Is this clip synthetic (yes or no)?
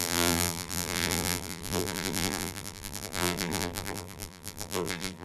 yes